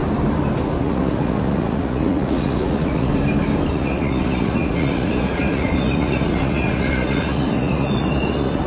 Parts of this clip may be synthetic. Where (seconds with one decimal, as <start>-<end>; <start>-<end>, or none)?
0.8-3.1; 3.7-8.7